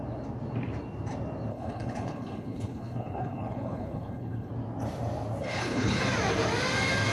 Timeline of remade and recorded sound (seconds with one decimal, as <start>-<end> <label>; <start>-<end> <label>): 0.0-1.5 recorded; 1.5-4.5 remade; 4.5-5.4 recorded; 5.4-6.0 remade; 6.0-7.1 recorded